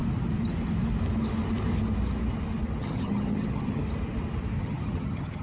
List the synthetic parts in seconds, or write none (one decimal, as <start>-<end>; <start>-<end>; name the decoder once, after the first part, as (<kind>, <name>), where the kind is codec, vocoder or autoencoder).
2.8-3.8 (vocoder, HiFi-GAN); 4.6-5.4